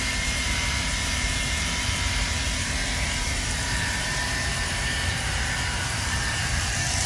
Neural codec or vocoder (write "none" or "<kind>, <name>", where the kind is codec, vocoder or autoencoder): vocoder, BigVGAN v2